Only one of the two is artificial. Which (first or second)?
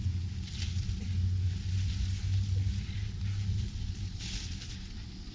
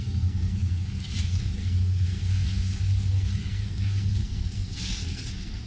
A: second